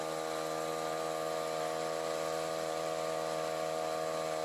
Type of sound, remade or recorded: recorded